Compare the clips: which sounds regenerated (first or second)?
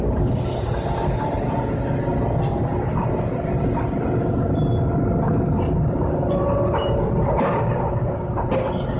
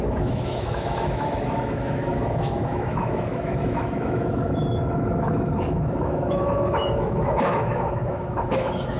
second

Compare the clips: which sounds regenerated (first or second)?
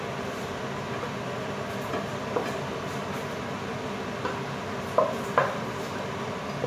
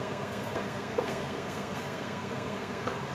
second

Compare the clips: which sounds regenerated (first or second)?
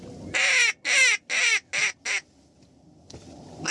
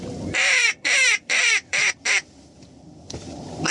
second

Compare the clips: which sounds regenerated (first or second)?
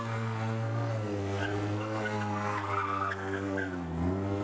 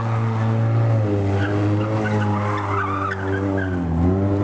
first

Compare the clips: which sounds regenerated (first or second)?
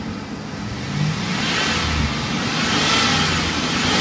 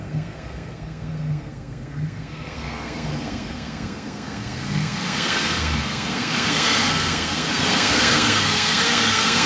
second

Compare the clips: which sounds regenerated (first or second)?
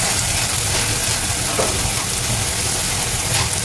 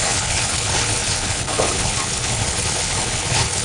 second